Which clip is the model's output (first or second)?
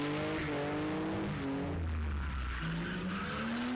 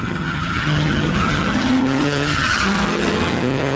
second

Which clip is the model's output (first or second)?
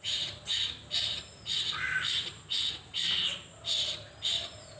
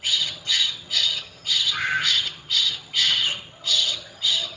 second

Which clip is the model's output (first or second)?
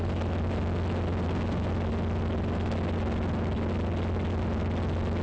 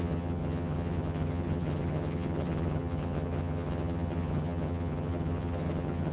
second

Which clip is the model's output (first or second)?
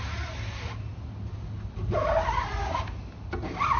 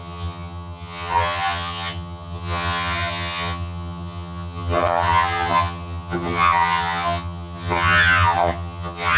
second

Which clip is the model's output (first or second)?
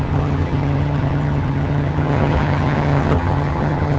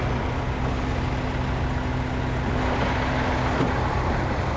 first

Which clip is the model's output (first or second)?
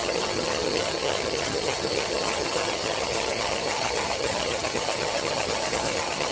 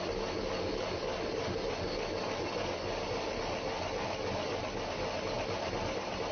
first